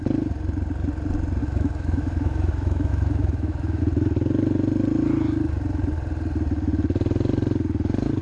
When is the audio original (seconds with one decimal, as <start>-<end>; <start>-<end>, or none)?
0.0-1.4; 3.8-8.2